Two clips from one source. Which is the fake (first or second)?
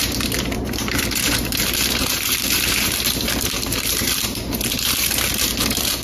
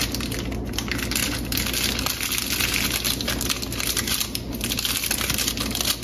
first